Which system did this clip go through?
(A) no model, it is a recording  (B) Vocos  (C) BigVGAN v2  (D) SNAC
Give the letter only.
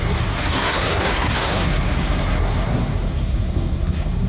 D